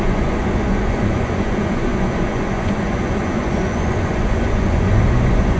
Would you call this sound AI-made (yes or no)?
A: yes